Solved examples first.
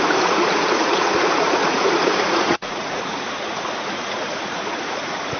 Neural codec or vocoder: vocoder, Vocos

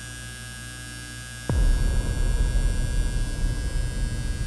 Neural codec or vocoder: none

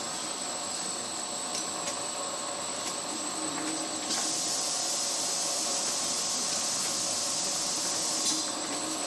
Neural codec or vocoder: none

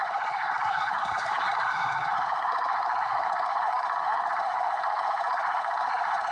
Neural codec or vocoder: codec, SNAC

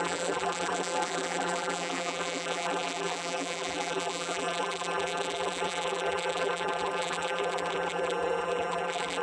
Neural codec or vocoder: vocoder, BigVGAN v2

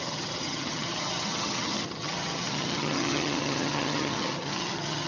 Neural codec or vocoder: vocoder, HiFi-GAN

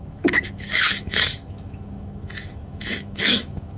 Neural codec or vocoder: autoencoder, DAC-VAE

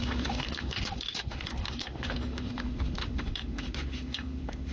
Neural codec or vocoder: autoencoder, DAC-VAE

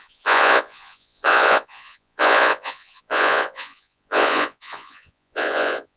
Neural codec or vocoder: vocoder, Vocos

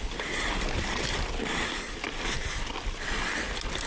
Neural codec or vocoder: none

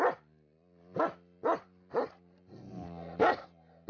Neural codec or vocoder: none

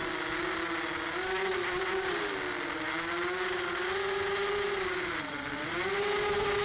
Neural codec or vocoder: none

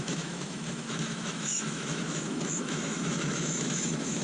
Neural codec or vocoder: autoencoder, DAC-VAE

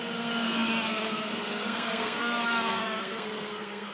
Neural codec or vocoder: codec, SNAC